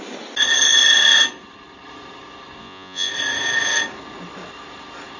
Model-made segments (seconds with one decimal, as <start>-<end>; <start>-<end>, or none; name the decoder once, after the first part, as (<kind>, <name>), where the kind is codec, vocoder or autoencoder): 2.6-3.1 (vocoder, Vocos)

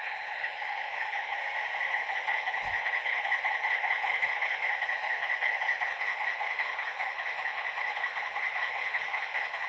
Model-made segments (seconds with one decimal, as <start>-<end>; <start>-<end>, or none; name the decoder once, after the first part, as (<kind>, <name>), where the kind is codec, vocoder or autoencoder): 0.0-1.4 (codec, HILCodec); 1.9-9.7

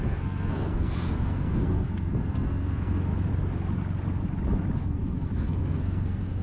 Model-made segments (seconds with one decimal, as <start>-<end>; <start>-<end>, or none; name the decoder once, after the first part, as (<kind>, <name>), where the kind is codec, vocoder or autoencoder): 0.0-3.1 (codec, SNAC); 4.8-6.4

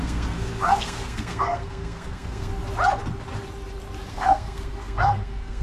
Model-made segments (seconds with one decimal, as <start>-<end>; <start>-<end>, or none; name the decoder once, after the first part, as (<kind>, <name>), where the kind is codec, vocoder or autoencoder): 0.0-2.5 (codec, SNAC); 4.1-5.6

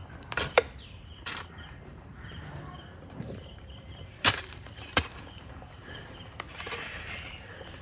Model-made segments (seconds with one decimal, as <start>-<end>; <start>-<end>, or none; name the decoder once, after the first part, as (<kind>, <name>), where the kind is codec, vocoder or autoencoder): 0.0-7.8 (vocoder, BigVGAN v2)

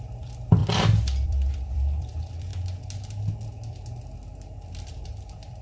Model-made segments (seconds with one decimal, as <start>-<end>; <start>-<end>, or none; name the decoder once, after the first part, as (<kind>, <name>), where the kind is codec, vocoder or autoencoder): 0.0-2.5 (vocoder, BigVGAN v2); 4.9-5.6

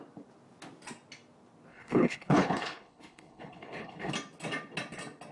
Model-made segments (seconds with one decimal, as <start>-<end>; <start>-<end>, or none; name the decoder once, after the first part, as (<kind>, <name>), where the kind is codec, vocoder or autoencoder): 1.7-4.1 (codec, HILCodec)